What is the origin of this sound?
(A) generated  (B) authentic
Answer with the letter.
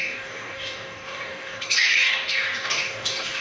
A